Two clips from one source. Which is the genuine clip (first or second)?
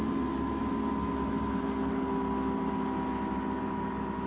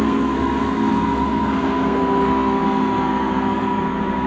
first